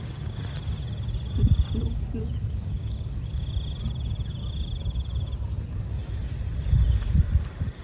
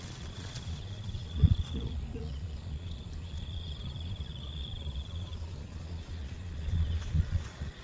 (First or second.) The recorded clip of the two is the first